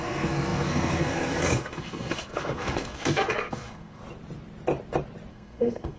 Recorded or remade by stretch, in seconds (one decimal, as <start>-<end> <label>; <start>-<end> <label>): 0.0-4.0 remade; 4.0-5.3 recorded; 5.3-6.0 remade